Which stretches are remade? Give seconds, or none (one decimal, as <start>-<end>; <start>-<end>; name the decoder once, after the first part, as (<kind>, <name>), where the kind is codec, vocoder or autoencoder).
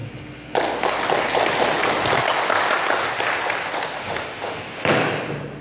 4.0-4.6 (autoencoder, DAC-VAE)